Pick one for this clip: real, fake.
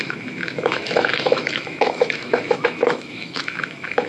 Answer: fake